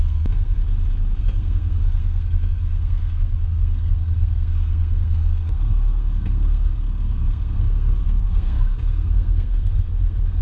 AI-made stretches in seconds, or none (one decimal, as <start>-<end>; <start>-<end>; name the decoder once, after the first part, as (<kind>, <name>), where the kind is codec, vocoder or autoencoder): 0.0-0.6 (codec, SNAC); 1.2-10.4